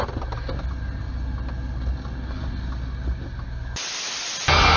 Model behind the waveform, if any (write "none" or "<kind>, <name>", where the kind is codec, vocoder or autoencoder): none